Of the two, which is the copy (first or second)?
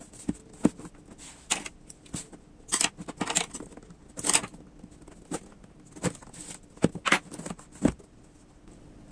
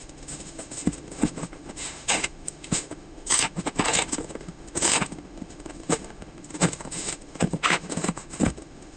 second